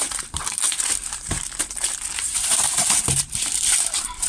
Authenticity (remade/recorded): remade